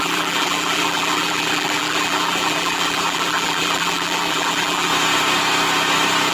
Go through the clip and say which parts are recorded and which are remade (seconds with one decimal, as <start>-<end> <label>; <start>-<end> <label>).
0.0-4.9 remade; 4.9-6.3 recorded